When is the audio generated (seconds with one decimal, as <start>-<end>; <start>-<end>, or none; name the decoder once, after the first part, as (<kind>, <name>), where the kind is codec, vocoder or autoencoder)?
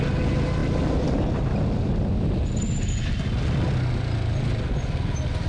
none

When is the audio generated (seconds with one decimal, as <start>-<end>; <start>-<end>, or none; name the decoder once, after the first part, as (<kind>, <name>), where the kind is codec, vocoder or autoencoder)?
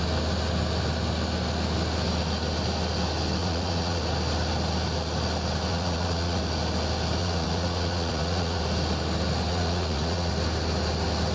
3.4-4.0 (vocoder, Vocos); 5.7-6.4; 7.2-8.6; 9.5-10.3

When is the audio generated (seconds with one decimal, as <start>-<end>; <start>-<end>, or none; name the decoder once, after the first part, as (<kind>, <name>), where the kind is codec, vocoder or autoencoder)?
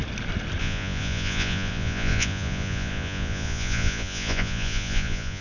0.6-5.4 (vocoder, Vocos)